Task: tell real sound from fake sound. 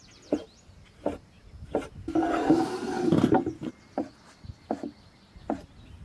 real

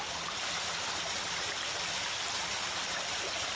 real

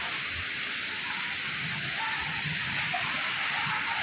real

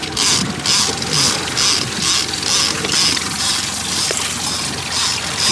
real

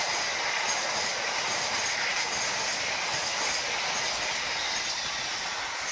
real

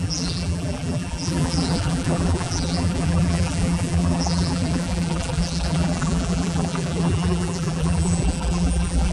fake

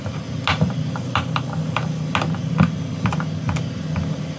real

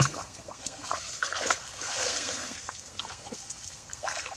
fake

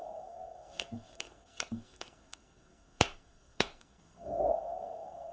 fake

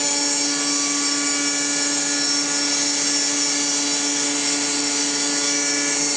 real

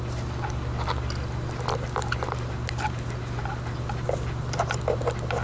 real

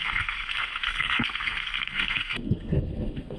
fake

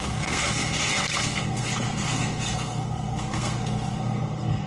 fake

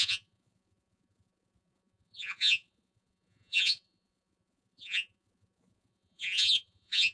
fake